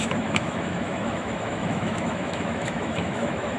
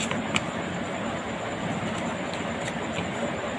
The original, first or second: second